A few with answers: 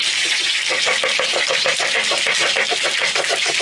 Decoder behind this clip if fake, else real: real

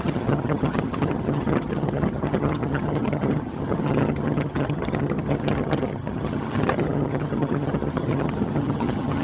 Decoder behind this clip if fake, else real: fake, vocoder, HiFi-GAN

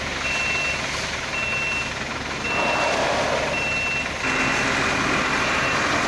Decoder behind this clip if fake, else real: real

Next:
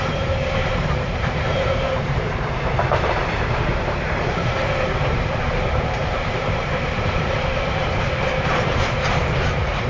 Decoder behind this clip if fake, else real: fake, vocoder, BigVGAN v2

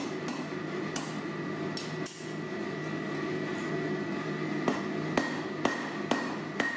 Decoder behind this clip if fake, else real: real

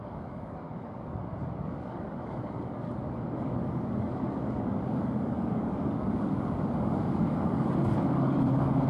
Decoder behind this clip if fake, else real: fake, codec, DAC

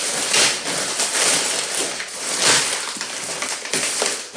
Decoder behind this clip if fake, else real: fake, vocoder, BigVGAN v2